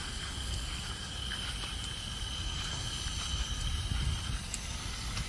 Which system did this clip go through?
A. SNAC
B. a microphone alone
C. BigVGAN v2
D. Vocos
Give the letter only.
B